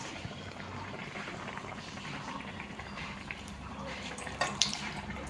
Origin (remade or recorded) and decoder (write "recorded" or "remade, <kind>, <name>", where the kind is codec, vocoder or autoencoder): remade, vocoder, BigVGAN v2